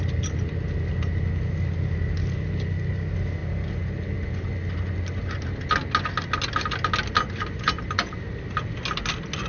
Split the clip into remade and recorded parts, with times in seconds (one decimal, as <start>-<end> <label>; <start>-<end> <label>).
0.0-9.5 recorded